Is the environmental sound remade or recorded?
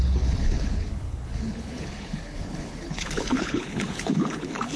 remade